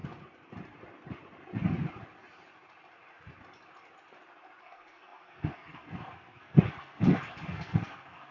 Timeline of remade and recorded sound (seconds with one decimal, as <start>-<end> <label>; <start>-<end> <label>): 0.0-4.6 recorded; 4.6-8.3 remade